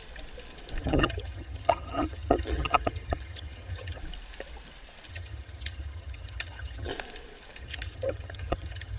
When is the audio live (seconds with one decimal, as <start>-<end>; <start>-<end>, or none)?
0.0-0.8; 4.0-5.1; 6.9-7.6